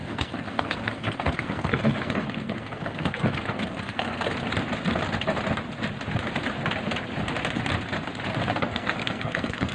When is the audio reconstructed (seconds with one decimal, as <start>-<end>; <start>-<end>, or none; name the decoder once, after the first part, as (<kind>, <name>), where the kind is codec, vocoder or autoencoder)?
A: 0.0-4.3 (codec, SNAC); 8.5-9.7

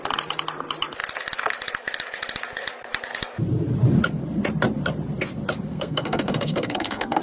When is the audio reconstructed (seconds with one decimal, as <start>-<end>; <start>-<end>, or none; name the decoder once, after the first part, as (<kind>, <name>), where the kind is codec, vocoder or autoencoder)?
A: 5.7-7.2 (codec, SNAC)

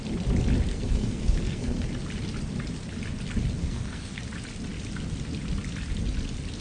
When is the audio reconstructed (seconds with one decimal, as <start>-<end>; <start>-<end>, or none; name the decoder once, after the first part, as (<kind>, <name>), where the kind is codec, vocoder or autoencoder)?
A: 0.7-1.9 (codec, SNAC); 3.6-4.2